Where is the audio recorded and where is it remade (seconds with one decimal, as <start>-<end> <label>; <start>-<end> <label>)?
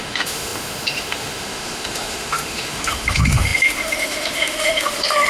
0.0-5.3 remade